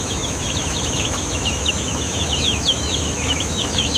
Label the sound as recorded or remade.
remade